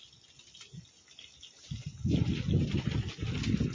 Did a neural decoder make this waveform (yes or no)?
no